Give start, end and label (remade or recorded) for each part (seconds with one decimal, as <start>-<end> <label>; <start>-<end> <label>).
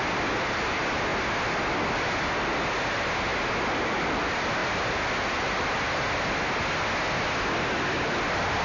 0.0-8.6 recorded